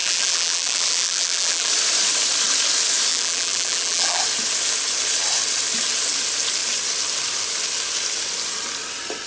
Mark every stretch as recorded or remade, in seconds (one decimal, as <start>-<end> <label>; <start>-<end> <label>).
0.0-1.7 remade; 1.7-3.1 recorded; 3.1-4.2 remade; 4.2-9.3 recorded